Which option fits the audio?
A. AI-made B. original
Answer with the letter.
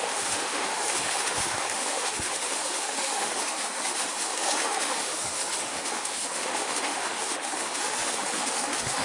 A